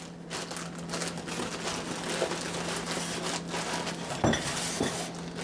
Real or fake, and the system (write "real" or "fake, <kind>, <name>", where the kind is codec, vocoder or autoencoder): real